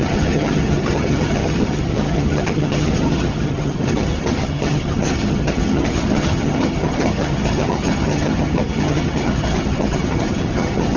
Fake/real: fake